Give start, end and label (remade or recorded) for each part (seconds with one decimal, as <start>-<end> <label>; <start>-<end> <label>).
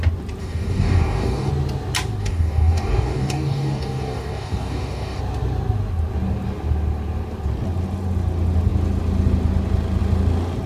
0.0-0.4 recorded; 0.4-1.5 remade; 1.5-2.2 recorded; 2.2-5.2 remade; 5.2-10.7 recorded